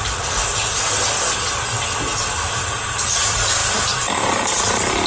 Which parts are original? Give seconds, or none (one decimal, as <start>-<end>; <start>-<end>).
0.0-5.1